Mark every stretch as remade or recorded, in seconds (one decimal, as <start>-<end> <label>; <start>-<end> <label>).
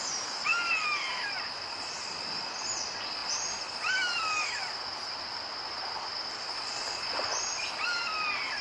0.0-0.5 remade; 0.5-1.7 recorded; 1.7-8.6 remade